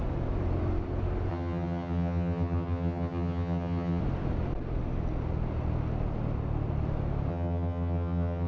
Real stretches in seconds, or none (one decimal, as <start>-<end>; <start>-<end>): 0.0-1.3; 4.0-7.3